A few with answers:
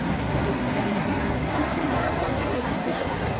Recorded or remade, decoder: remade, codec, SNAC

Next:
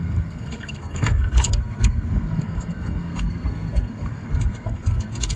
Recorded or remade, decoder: remade, codec, SNAC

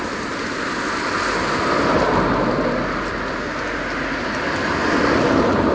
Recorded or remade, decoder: recorded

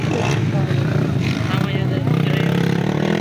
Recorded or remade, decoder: recorded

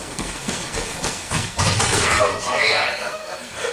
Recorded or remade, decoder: remade, codec, SNAC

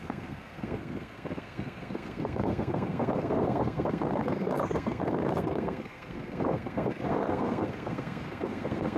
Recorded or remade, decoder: remade, codec, SNAC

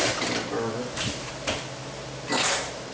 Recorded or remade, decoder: recorded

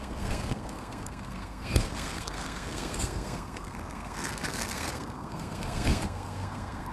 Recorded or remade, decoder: remade, codec, SNAC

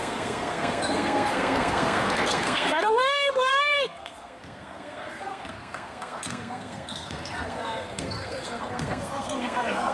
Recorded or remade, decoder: remade, codec, SNAC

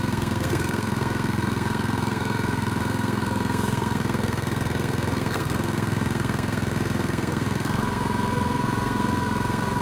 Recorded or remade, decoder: remade, codec, SNAC